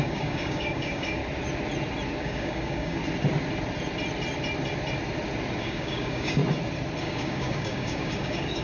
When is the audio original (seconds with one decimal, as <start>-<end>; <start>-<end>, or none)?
1.2-2.2; 3.0-5.6; 6.4-7.0